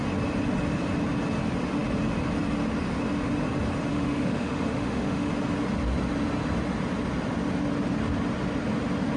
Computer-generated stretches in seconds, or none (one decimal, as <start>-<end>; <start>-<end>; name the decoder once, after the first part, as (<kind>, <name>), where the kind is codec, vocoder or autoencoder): 3.9-5.3 (autoencoder, DAC-VAE)